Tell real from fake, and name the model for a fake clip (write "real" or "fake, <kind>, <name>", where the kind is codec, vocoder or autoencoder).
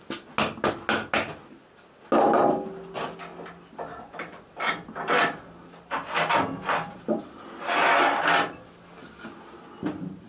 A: real